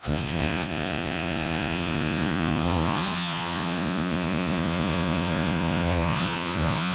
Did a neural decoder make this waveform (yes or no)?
yes